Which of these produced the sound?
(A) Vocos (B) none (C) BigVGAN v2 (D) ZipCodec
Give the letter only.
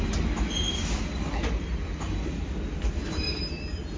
B